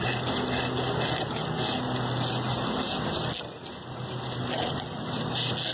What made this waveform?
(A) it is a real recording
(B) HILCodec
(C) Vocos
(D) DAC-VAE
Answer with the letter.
A